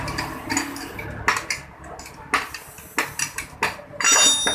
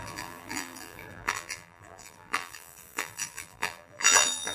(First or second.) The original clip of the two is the first